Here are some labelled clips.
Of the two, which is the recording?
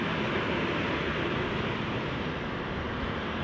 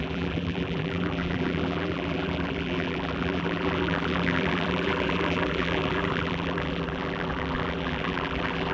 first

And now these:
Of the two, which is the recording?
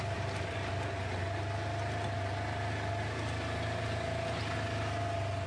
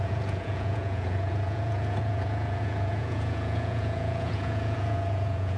first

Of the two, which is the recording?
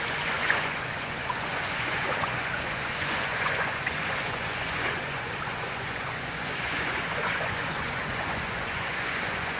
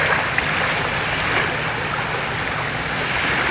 second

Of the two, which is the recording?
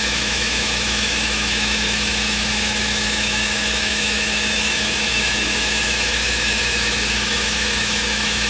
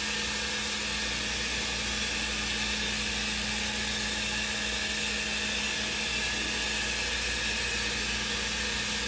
second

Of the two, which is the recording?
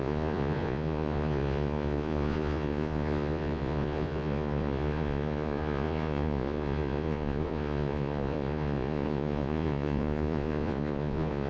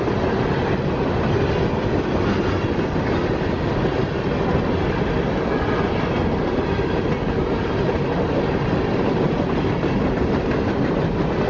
second